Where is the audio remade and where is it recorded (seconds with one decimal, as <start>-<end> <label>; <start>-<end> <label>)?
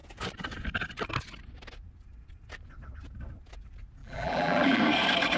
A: 0.0-4.0 recorded; 4.0-4.8 remade; 4.8-5.4 recorded